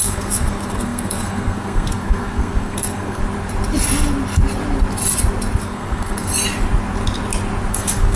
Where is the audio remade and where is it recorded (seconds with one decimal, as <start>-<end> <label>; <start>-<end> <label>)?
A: 0.0-3.2 remade; 3.2-5.6 recorded; 5.6-6.3 remade; 6.3-7.7 recorded; 7.7-8.2 remade